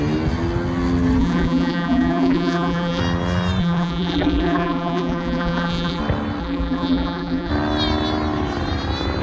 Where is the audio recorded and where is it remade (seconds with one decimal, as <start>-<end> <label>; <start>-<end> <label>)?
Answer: 0.0-1.2 recorded; 1.2-3.0 remade; 3.0-3.6 recorded; 3.6-6.0 remade; 6.0-6.4 recorded; 6.4-7.5 remade; 7.5-9.2 recorded